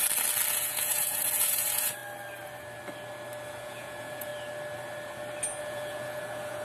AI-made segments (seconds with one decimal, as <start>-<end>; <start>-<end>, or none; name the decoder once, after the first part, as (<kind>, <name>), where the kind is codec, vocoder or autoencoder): 0.5-2.0 (vocoder, Vocos); 3.5-4.3; 5.6-6.6